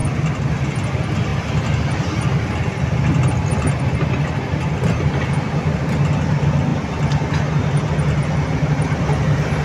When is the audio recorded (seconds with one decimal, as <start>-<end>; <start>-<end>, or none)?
0.0-9.6